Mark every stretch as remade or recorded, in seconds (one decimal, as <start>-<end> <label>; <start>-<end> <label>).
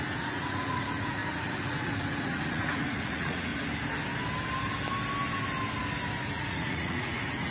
0.0-3.5 remade; 3.5-6.3 recorded; 6.3-7.5 remade